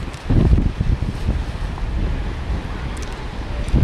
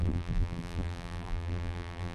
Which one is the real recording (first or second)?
first